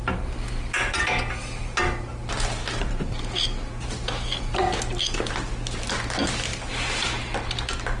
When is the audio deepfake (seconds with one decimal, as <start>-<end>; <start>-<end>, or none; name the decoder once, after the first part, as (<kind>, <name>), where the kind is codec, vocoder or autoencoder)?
none